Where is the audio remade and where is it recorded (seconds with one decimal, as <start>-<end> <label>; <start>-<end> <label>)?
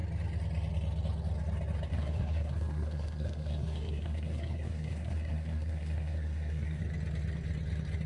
0.0-1.9 recorded; 1.9-6.8 remade; 6.8-8.1 recorded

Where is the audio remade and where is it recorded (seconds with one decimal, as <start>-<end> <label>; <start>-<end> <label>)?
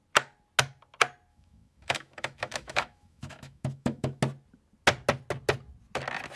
0.0-1.3 recorded; 1.3-4.2 remade; 4.2-6.4 recorded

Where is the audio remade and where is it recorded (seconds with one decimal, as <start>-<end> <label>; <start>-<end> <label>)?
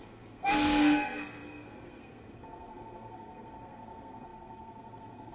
0.0-5.3 remade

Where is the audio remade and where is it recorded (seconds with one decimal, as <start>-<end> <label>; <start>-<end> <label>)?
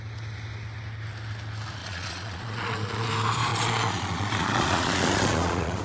0.0-1.8 recorded; 1.8-3.1 remade; 3.1-3.5 recorded; 3.5-5.8 remade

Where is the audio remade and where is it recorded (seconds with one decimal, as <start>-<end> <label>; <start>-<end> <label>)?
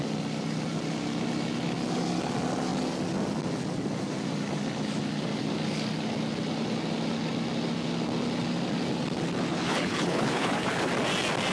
0.0-9.5 recorded; 9.5-10.9 remade; 10.9-11.5 recorded